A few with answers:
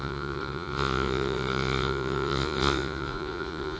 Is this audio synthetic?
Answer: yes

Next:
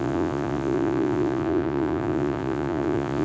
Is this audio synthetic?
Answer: yes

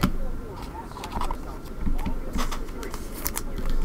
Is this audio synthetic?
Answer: no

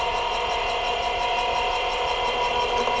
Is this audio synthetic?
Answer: no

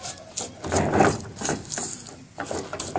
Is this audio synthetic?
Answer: no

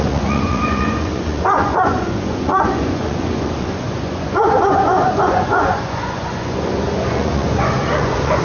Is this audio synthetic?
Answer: yes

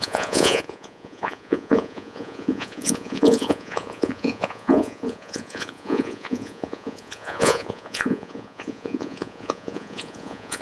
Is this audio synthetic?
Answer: yes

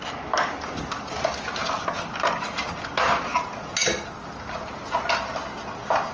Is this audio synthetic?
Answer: no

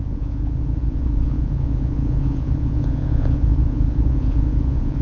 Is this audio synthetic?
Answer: yes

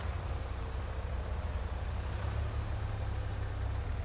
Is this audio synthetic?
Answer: no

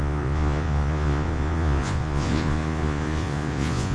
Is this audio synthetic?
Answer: yes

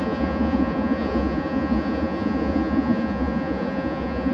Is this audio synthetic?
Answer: yes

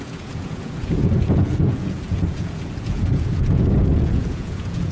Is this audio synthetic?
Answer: yes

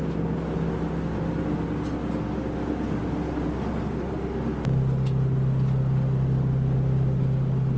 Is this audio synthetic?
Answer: no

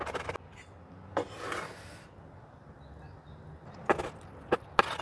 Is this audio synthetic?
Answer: no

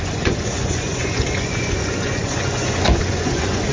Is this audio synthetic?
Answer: yes